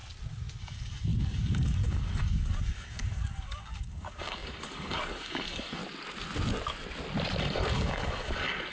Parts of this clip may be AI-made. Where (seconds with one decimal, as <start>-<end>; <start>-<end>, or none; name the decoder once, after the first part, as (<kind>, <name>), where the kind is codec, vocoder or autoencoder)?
0.6-5.8 (codec, DAC); 7.4-8.7